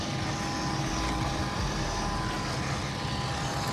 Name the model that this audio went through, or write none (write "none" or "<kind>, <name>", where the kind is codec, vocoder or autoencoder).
none